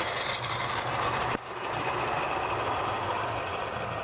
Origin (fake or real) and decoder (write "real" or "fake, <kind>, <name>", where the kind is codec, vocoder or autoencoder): real